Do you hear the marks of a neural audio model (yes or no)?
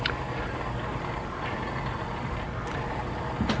no